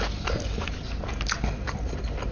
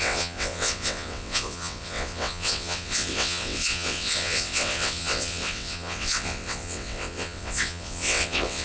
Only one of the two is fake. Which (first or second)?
second